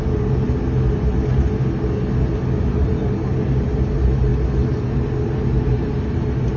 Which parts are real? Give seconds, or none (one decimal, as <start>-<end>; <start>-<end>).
0.0-6.6

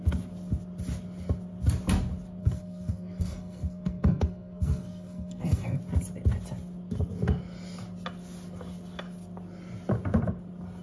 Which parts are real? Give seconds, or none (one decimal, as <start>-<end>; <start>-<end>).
0.0-2.4; 5.8-10.8

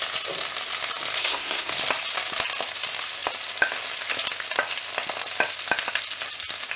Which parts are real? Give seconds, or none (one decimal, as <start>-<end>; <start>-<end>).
0.0-1.2; 1.7-6.8

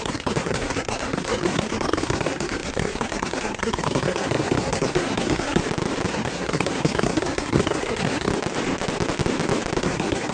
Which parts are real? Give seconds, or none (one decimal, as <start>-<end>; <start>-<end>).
5.6-6.1; 8.3-9.8

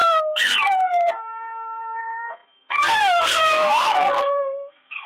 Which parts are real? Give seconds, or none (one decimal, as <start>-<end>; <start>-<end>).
none

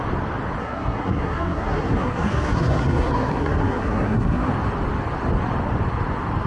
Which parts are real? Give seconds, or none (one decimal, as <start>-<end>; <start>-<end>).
0.0-0.6; 4.5-6.5